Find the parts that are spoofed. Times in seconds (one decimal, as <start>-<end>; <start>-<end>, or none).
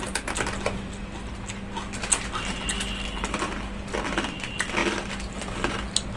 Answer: none